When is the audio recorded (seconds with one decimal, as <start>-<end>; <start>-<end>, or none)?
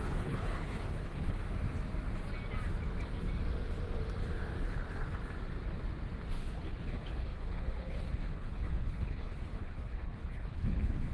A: 1.4-4.6; 5.2-6.3